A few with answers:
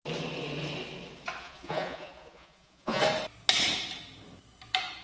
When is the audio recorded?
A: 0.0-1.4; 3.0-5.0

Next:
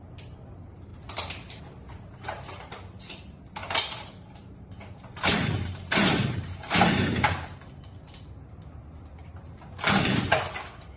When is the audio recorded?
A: 0.0-0.9; 1.6-3.6; 7.8-11.0

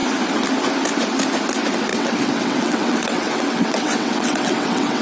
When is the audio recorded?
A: 0.0-1.9

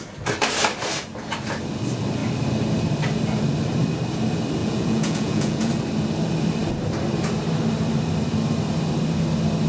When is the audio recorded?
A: 0.0-4.6; 5.7-9.7

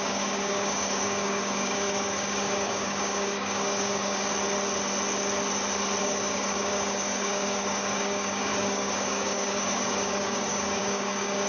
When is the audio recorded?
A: 4.3-6.0

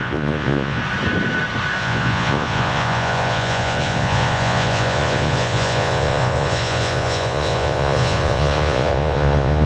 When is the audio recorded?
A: 0.8-1.8

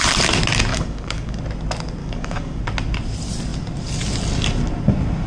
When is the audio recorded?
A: 0.0-0.7; 1.4-2.0; 2.6-5.3